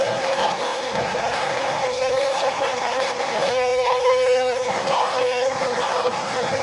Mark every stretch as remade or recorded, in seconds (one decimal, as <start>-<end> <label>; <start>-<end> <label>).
0.0-6.6 remade